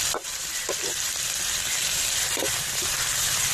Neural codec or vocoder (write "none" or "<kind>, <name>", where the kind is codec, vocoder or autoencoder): vocoder, BigVGAN v2